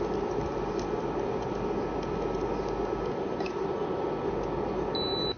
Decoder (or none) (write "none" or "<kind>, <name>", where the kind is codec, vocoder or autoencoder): none